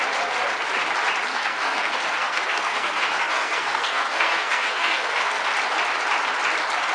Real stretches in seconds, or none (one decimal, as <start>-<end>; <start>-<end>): 0.0-1.3; 5.4-6.9